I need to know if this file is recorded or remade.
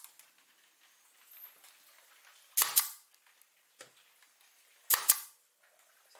recorded